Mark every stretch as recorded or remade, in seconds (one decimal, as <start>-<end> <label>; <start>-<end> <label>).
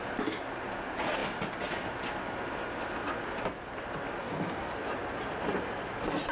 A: 0.0-4.2 recorded; 4.2-4.7 remade; 4.7-6.3 recorded